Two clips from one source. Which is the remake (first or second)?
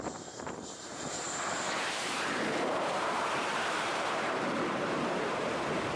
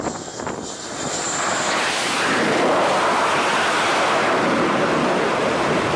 first